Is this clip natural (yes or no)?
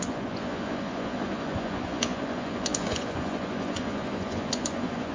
no